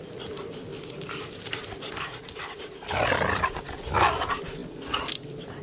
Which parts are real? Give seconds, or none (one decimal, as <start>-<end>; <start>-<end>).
0.0-5.6